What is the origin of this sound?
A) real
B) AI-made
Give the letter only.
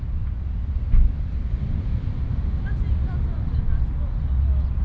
A